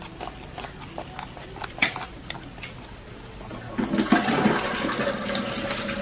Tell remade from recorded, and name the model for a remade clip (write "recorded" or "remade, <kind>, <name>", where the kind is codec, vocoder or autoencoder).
recorded